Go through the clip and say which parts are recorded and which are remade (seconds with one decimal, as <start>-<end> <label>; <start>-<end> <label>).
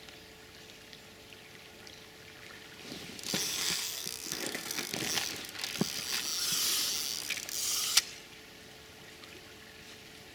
0.0-3.6 recorded; 3.6-4.9 remade; 4.9-10.3 recorded